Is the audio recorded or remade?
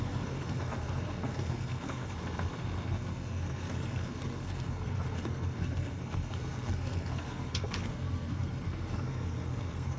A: remade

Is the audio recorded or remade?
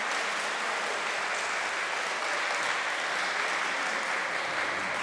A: recorded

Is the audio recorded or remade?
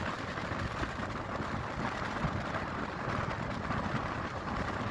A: recorded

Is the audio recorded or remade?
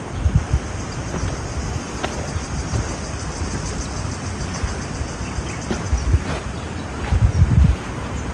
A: recorded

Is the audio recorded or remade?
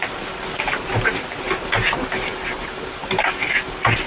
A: recorded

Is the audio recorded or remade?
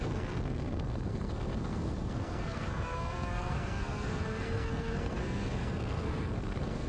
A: remade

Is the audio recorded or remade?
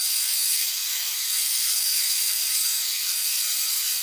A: remade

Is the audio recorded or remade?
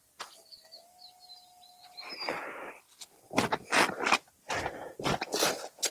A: recorded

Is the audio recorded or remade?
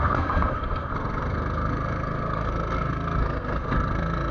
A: remade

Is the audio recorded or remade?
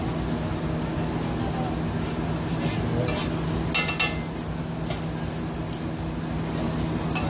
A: recorded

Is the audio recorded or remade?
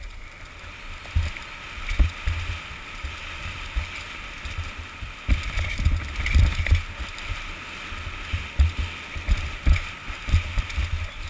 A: recorded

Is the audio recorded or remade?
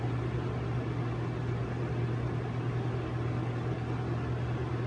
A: recorded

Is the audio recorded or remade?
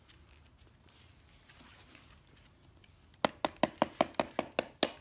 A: recorded